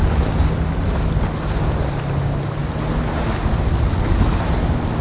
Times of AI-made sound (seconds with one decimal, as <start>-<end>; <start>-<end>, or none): none